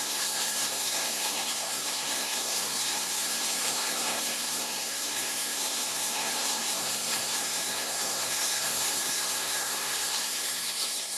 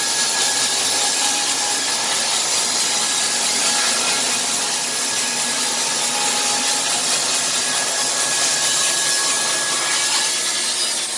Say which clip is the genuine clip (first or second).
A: second